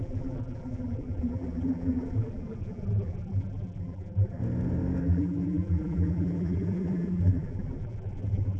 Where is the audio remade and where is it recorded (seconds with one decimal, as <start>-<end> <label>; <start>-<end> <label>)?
0.0-4.4 remade; 4.4-5.0 recorded; 5.0-8.6 remade

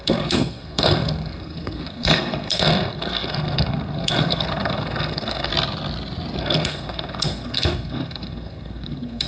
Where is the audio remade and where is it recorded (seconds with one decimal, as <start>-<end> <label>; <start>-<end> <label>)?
0.0-5.5 remade; 5.5-6.4 recorded; 6.4-9.3 remade

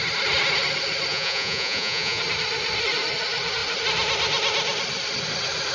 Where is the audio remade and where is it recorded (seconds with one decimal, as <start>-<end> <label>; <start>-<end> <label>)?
0.0-1.1 recorded; 1.1-2.2 remade; 2.2-5.7 recorded

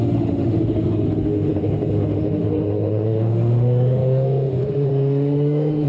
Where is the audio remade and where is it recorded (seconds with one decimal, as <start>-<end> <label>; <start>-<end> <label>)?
0.0-5.9 remade

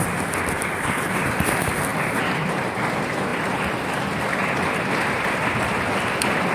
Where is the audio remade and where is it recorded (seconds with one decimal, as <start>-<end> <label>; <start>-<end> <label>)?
0.0-6.5 recorded

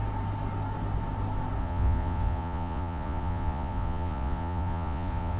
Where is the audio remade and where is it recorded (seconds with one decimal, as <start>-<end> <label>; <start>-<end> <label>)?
0.0-1.6 recorded; 1.6-5.4 remade